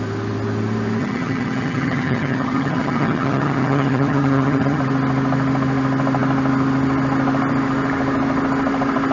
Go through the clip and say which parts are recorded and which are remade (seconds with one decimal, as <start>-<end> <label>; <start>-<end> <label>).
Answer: 0.0-1.0 recorded; 1.0-4.8 remade; 4.8-9.1 recorded